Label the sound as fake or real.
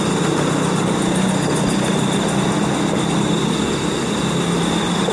real